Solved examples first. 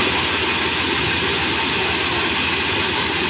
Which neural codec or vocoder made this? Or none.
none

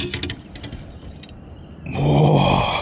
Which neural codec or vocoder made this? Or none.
none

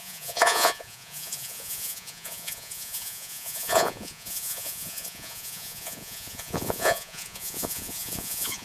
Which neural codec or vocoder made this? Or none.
vocoder, Vocos